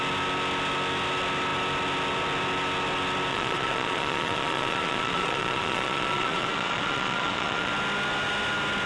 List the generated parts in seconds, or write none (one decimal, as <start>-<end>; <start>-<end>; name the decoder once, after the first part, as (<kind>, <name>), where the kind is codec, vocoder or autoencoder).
3.3-7.7 (vocoder, Vocos)